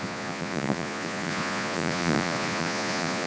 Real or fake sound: fake